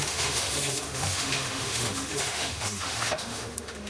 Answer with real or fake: fake